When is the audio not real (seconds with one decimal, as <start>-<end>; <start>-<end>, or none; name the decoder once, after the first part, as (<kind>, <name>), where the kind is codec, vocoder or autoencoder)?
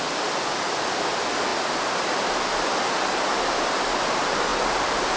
none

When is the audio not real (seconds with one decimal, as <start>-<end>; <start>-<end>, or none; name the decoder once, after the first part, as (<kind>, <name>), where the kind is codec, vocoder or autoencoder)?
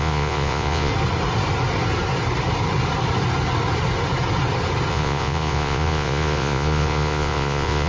0.0-0.9 (vocoder, Vocos); 4.9-7.9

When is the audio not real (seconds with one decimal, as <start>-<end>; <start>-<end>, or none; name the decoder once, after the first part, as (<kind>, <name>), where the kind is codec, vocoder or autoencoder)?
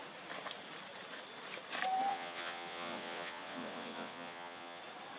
2.1-4.8 (vocoder, WaveNeXt)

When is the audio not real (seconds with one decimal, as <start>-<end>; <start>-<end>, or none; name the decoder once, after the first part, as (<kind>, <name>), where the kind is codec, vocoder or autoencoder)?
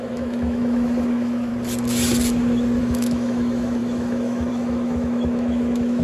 0.0-1.5 (autoencoder, DAC-VAE); 2.8-6.0